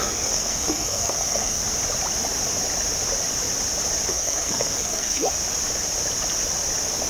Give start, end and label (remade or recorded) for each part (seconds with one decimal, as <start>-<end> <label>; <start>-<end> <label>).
0.0-1.6 remade; 1.6-4.1 recorded; 4.1-5.4 remade; 5.4-7.1 recorded